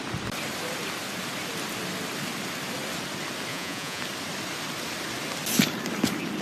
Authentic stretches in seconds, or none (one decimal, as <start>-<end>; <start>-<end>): 0.0-3.5; 4.0-6.4